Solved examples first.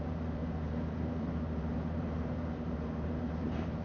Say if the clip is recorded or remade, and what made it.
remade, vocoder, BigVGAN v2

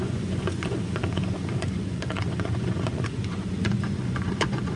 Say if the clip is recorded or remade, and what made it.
remade, vocoder, Vocos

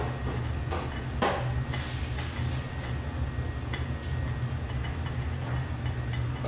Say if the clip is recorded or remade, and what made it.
recorded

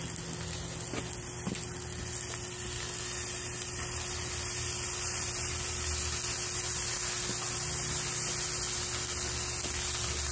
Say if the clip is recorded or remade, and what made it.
recorded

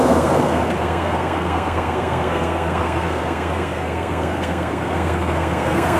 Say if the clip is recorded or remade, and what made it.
remade, codec, SNAC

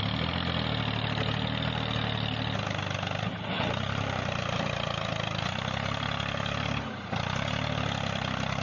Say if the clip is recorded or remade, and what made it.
recorded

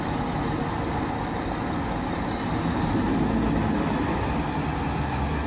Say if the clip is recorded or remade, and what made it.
recorded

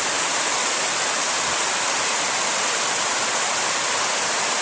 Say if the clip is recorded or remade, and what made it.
recorded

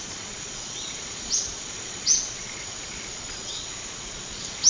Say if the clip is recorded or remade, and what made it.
remade, vocoder, Vocos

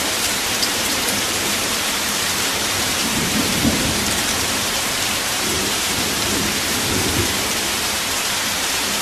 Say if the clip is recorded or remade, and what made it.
remade, vocoder, BigVGAN v2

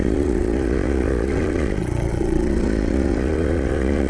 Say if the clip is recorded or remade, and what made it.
remade, vocoder, Vocos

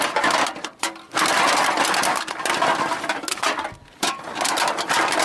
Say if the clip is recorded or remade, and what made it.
recorded